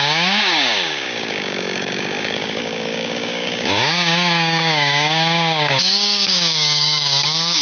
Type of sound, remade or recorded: remade